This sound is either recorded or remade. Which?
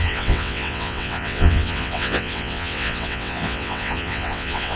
remade